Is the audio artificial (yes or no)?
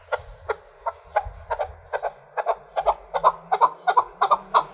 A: no